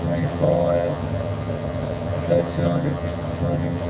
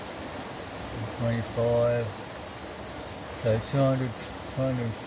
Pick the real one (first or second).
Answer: second